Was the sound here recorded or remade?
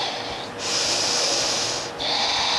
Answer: recorded